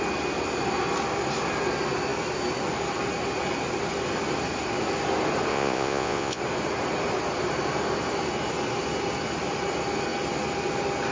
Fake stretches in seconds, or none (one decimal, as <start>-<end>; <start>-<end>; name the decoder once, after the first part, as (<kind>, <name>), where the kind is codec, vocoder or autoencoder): 5.5-6.4 (vocoder, Vocos)